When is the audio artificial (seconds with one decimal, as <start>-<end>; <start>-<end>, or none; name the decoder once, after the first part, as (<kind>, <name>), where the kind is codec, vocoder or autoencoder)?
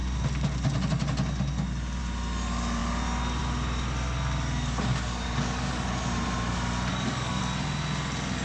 4.9-5.9 (codec, DAC); 6.9-7.4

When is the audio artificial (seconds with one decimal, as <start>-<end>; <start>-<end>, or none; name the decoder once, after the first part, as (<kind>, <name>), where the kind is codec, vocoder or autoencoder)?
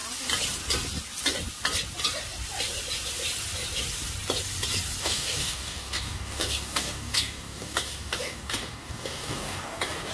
5.0-10.1 (codec, DAC)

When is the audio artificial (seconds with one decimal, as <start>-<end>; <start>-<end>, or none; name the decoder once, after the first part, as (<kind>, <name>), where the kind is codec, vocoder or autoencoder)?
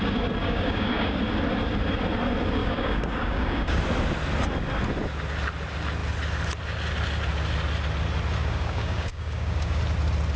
0.4-1.2 (codec, DAC); 2.6-3.8; 8.4-9.8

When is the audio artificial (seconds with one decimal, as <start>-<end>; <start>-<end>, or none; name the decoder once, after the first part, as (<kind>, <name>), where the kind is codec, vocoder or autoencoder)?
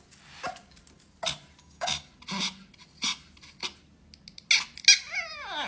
1.6-2.1 (codec, DAC)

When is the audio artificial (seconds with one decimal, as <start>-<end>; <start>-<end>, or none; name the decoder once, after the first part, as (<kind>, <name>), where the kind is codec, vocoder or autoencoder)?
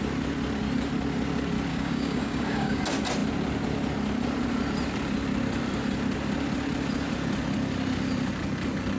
1.7-2.8 (codec, DAC)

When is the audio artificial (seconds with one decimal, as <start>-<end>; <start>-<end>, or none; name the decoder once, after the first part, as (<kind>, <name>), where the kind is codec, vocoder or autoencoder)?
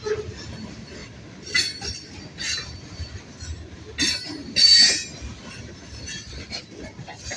none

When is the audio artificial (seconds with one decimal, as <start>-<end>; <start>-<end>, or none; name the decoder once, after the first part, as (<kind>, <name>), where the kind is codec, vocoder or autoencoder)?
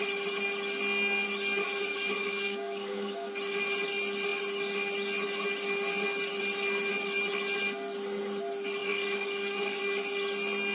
1.6-3.3 (codec, DAC); 8.8-9.8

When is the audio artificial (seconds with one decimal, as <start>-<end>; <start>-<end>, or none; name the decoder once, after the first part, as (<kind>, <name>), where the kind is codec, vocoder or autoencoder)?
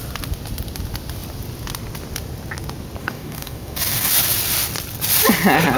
3.0-4.1 (codec, DAC)